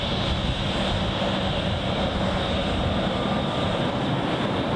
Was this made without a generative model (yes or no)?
yes